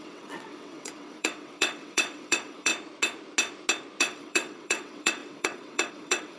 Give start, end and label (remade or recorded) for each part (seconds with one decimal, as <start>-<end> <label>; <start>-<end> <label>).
0.0-2.7 remade; 2.7-4.0 recorded; 4.0-6.4 remade